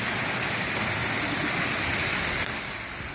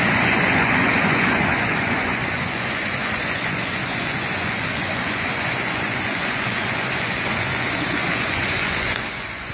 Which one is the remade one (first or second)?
second